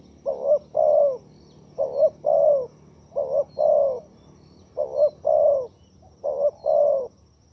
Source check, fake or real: real